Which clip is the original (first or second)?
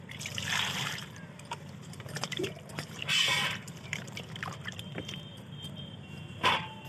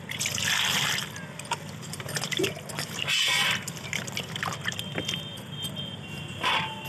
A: second